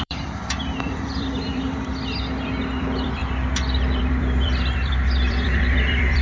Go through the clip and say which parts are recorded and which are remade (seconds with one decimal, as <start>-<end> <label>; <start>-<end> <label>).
0.0-1.9 remade; 1.9-2.8 recorded; 2.8-3.2 remade; 3.2-4.0 recorded; 4.0-6.2 remade